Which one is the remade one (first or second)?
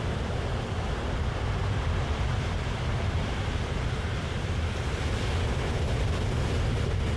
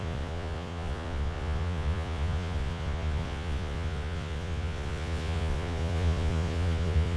second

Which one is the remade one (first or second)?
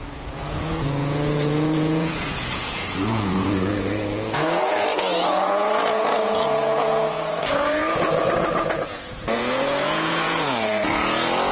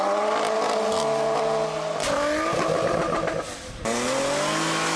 first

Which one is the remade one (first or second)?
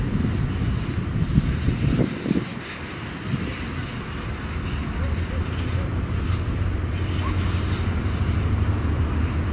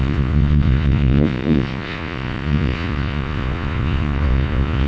second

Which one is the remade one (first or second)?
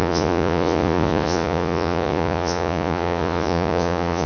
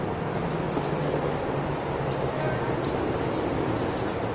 first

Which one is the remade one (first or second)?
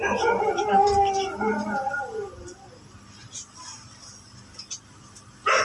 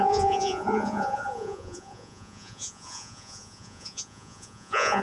second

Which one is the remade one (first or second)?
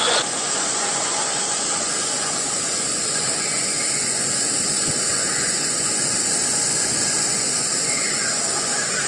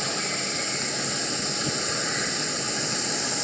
first